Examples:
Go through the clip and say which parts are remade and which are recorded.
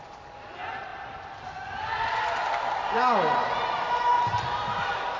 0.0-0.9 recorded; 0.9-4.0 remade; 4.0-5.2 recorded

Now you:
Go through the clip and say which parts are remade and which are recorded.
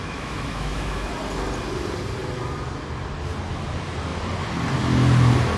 0.0-1.1 remade; 1.1-5.6 recorded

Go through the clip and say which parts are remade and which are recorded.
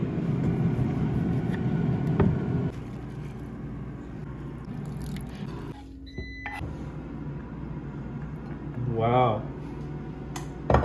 0.0-10.8 recorded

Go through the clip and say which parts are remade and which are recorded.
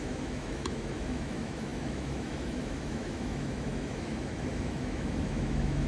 0.0-5.9 remade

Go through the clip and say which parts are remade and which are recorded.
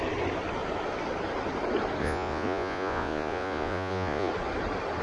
0.0-2.0 recorded; 2.0-4.3 remade; 4.3-5.0 recorded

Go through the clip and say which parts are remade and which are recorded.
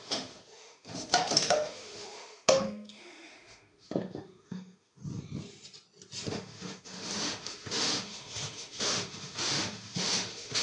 0.0-5.0 remade; 5.0-6.3 recorded; 6.3-10.6 remade